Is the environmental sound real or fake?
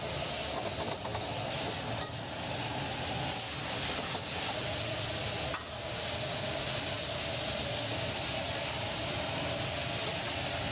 real